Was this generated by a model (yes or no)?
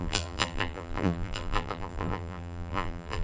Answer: yes